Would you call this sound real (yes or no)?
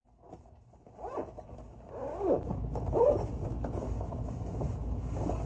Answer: yes